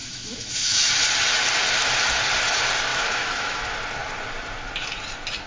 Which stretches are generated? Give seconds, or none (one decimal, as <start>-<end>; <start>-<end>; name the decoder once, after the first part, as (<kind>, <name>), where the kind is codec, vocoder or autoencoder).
0.0-0.9 (autoencoder, DAC-VAE); 2.9-3.6